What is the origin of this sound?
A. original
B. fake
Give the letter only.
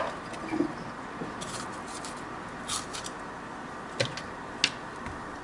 A